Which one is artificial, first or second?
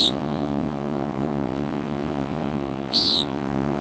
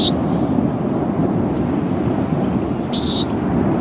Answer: first